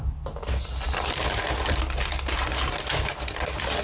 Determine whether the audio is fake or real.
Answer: real